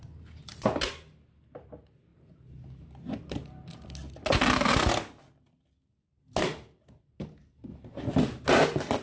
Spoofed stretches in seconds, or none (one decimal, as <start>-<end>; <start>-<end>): none